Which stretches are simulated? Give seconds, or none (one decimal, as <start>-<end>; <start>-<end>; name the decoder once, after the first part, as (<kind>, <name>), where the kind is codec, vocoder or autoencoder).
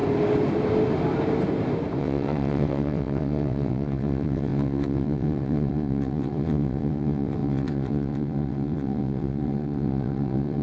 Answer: 2.0-10.6 (vocoder, WaveNeXt)